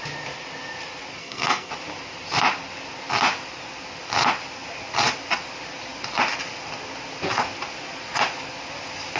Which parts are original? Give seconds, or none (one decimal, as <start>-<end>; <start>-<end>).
0.0-1.2; 1.7-9.2